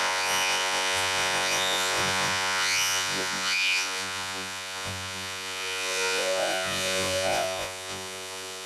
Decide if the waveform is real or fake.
fake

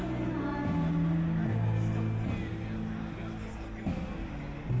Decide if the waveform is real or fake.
real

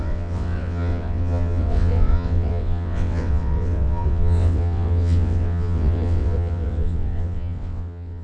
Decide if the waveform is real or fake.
fake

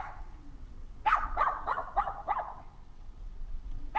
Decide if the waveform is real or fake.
fake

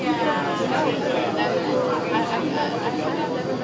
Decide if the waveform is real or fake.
real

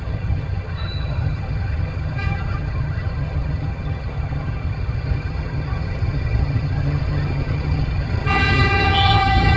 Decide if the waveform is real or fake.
fake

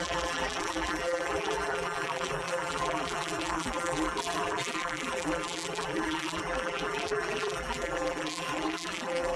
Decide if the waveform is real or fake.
fake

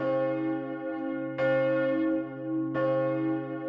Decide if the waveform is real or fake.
real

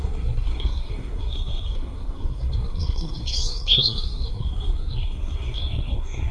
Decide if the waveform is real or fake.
fake